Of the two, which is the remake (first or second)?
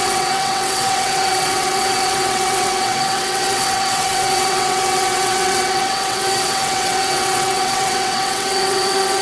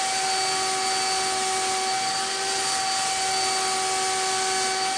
first